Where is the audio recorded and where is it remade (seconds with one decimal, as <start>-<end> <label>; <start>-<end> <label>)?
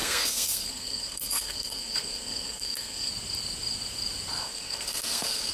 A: 0.0-3.1 remade; 3.1-4.4 recorded; 4.4-5.5 remade